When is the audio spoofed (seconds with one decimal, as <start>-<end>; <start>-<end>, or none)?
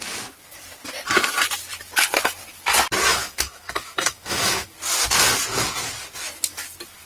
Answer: 3.1-4.7